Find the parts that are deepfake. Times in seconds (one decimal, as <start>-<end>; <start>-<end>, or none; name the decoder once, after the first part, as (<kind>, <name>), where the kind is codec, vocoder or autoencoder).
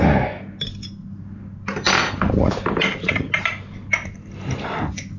none